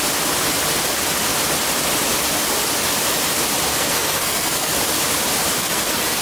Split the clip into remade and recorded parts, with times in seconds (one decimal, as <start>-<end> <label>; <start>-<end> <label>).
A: 0.0-3.7 recorded; 3.7-4.7 remade; 4.7-5.6 recorded; 5.6-6.2 remade